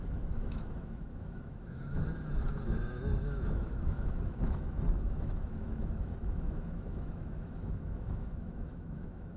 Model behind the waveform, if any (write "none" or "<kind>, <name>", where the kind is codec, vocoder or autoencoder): autoencoder, DAC-VAE